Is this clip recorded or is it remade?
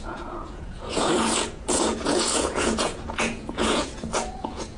remade